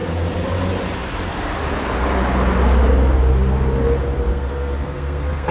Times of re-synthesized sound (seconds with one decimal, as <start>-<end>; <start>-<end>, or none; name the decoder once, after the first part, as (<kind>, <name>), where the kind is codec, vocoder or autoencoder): 4.3-5.5 (codec, SNAC)